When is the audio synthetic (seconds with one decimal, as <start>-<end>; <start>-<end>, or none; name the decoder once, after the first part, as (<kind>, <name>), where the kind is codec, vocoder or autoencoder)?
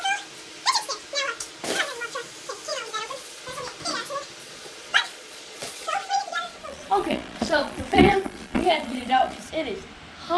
2.7-3.4 (vocoder, Vocos); 4.4-9.5